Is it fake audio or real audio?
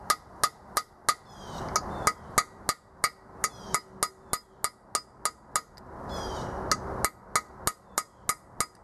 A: real